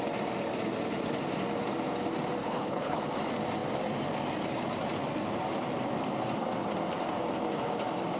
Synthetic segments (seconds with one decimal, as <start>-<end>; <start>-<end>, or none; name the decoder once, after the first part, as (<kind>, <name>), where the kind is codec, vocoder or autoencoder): 2.4-3.0 (codec, HILCodec)